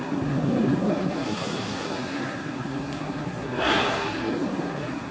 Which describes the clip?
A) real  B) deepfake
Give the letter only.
B